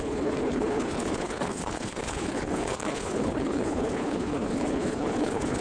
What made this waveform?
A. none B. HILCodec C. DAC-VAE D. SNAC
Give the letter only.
B